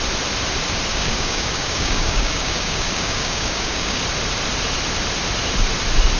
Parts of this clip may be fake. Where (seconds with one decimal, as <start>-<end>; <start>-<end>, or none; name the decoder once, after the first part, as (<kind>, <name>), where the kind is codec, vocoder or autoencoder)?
0.9-4.0 (codec, DAC)